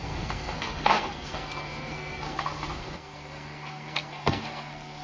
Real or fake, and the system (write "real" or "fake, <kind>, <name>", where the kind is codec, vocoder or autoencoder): fake, codec, SNAC